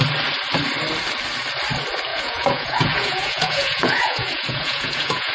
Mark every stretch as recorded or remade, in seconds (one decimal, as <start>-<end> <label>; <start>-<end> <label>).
0.0-2.1 recorded; 2.1-5.3 remade